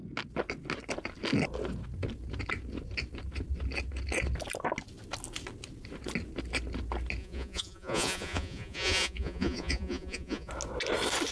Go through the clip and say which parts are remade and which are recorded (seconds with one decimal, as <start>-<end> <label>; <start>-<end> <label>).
0.0-7.2 recorded; 7.2-10.5 remade; 10.5-11.3 recorded

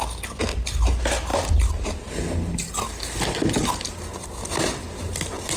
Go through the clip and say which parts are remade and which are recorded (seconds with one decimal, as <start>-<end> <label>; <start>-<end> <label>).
0.0-5.6 recorded